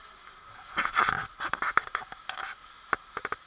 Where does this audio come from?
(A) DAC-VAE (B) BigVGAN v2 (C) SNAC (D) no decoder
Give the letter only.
D